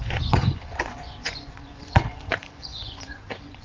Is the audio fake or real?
fake